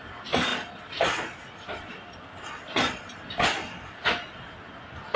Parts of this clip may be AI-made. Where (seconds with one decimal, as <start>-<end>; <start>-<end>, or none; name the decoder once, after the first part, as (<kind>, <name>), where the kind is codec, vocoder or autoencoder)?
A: none